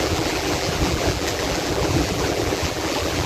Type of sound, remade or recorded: remade